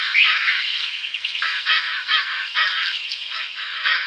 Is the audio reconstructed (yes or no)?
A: yes